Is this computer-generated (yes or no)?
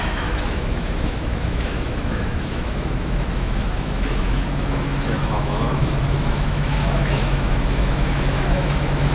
yes